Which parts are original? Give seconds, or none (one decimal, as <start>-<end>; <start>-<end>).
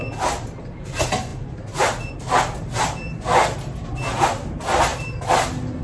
0.0-5.8